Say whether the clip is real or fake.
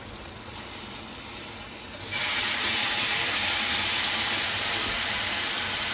real